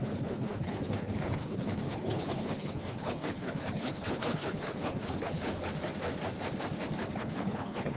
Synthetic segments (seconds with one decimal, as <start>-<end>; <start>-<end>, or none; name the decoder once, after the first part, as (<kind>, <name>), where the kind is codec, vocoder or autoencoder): 0.0-5.5 (codec, HILCodec); 7.1-8.0